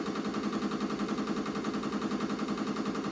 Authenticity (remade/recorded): recorded